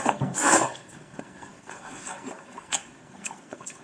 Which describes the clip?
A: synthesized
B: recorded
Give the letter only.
A